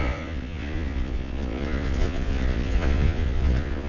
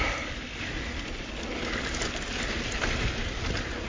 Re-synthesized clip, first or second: first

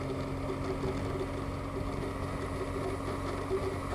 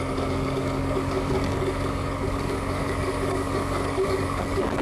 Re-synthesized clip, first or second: second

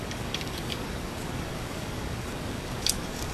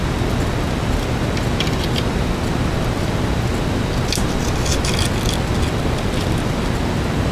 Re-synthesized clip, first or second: first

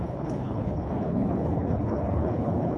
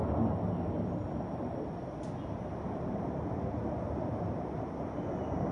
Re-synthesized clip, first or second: first